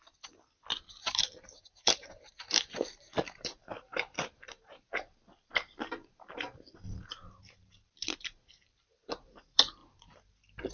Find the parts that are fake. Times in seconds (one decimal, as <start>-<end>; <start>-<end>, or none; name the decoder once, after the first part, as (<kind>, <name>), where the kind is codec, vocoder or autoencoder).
0.9-5.4 (vocoder, BigVGAN v2); 6.3-10.7